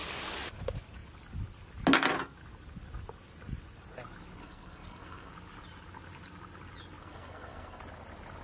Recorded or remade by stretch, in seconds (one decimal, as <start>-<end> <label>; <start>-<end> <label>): 0.0-4.4 recorded; 4.4-5.3 remade; 5.3-7.0 recorded; 7.0-7.8 remade; 7.8-8.4 recorded